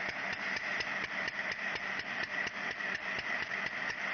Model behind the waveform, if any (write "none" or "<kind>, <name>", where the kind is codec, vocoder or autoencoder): none